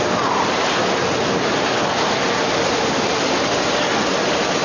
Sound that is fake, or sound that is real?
real